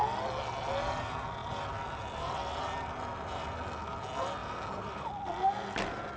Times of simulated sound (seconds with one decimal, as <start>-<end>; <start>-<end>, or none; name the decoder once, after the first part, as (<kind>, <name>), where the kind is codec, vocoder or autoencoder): 4.4-5.1 (vocoder, BigVGAN v2)